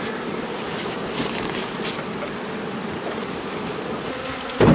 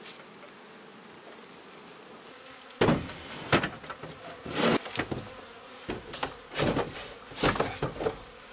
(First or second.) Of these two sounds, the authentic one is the second